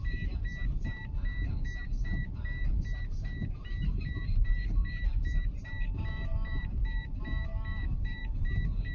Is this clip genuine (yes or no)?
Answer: no